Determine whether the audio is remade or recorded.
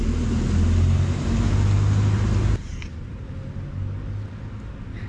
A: recorded